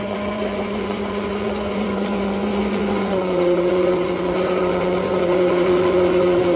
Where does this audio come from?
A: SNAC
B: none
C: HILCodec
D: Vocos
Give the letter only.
D